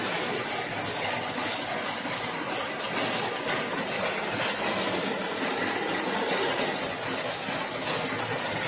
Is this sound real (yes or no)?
yes